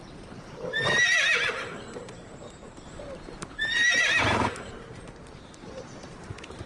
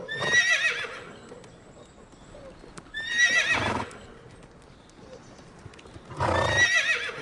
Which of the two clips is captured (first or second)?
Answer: second